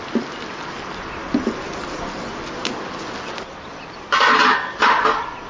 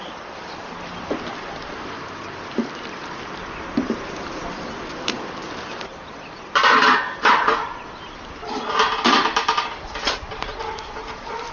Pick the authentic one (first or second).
first